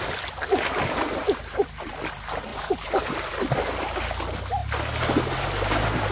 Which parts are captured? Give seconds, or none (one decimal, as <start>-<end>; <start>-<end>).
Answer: 0.0-1.2; 1.9-2.5; 3.4-6.1